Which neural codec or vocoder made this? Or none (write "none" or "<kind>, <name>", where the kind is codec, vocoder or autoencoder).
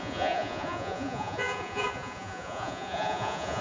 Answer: vocoder, Vocos